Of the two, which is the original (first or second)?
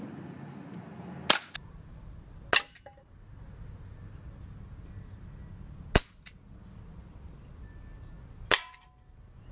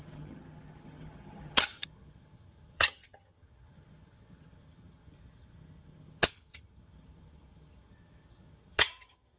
first